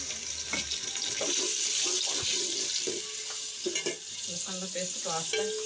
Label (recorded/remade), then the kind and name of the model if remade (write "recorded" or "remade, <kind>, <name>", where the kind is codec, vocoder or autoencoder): recorded